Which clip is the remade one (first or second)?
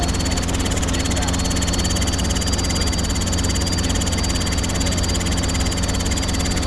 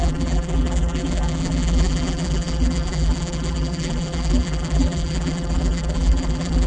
second